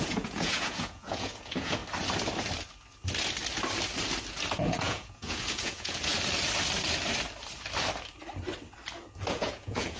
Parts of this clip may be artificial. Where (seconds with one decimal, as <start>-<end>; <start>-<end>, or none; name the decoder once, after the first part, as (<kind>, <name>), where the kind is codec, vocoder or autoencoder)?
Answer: 0.0-1.8 (vocoder, Vocos); 4.5-6.1; 9.3-10.0